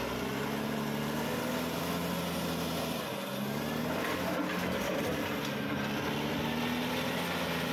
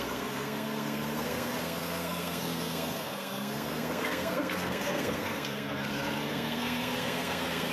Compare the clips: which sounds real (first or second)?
first